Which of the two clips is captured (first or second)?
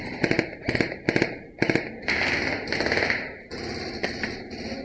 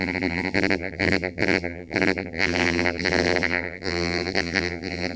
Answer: first